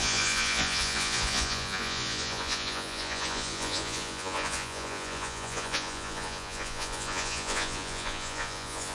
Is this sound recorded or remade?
remade